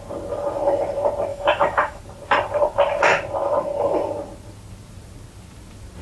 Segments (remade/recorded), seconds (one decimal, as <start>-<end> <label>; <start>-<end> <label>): 0.0-1.3 recorded; 1.3-2.0 remade; 2.0-6.0 recorded